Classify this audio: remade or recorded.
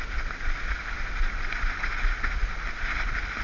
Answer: recorded